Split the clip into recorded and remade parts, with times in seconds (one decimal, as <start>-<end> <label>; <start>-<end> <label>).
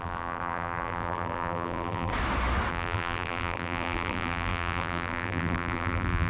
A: 0.0-2.1 remade; 2.1-2.7 recorded; 2.7-6.3 remade